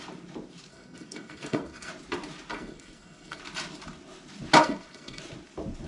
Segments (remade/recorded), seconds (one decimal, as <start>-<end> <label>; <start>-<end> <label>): 0.0-0.7 recorded; 0.7-1.9 remade; 1.9-2.5 recorded; 2.5-3.4 remade; 3.4-4.6 recorded; 4.6-5.2 remade; 5.2-5.9 recorded